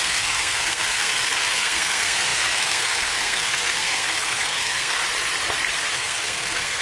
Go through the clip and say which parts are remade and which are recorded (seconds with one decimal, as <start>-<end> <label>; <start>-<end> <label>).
0.0-5.0 remade; 5.0-5.9 recorded; 5.9-6.8 remade